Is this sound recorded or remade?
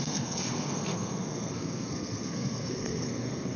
remade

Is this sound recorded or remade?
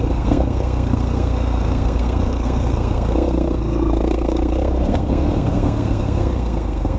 remade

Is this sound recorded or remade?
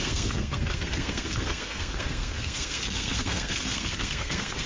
remade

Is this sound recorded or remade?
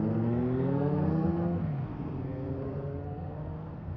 remade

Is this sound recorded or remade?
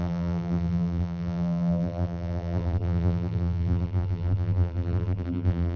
remade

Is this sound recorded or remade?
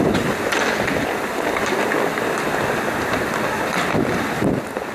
recorded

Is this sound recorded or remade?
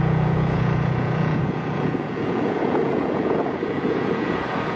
remade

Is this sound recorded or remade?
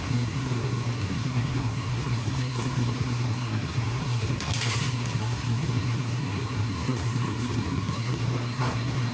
remade